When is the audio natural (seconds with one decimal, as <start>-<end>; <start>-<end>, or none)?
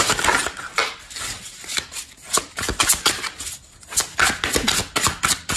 0.0-5.6